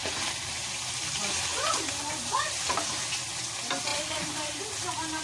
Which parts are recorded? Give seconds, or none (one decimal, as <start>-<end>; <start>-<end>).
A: 0.7-3.9; 4.6-5.2